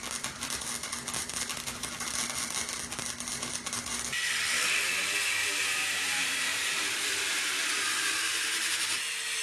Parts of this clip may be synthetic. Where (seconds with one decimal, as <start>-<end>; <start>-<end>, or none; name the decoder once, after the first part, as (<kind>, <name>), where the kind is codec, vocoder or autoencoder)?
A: 5.4-8.0 (vocoder, BigVGAN v2)